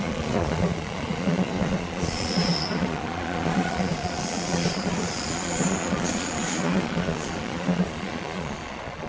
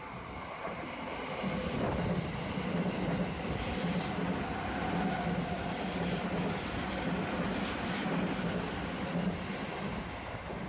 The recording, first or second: second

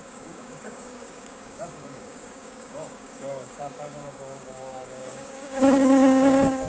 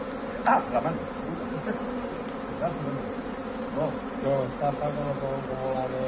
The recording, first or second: second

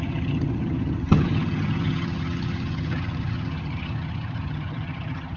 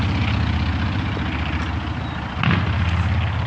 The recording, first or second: second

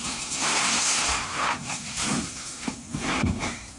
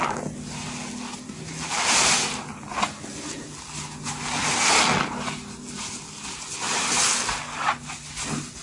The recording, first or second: second